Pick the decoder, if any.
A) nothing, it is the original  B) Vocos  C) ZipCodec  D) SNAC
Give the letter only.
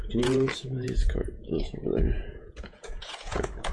B